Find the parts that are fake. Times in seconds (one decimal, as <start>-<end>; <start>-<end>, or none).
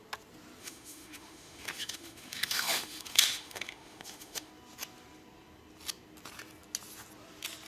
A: 0.6-4.5